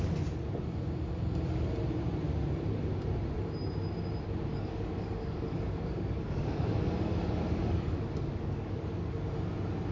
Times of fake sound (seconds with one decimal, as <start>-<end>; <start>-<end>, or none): 4.5-8.9